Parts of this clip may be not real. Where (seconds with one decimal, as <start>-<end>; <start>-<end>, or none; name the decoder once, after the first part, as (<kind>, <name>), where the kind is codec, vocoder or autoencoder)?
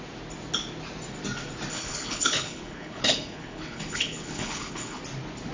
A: 1.7-5.0 (codec, HILCodec)